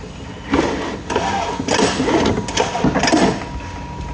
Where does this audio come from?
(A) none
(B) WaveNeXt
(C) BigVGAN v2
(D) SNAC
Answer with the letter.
A